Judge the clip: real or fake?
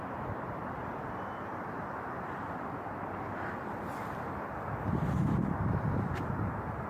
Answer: real